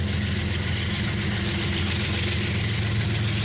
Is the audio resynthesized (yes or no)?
no